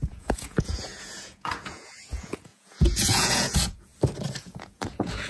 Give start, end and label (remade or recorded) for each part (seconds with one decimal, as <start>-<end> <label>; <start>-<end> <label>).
0.0-3.9 remade; 3.9-4.4 recorded; 4.4-5.3 remade